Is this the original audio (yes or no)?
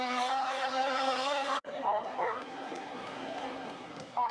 no